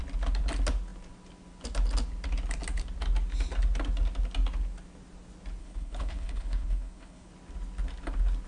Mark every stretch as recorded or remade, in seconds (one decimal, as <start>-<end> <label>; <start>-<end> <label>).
0.0-5.6 recorded; 5.6-7.3 remade; 7.3-8.5 recorded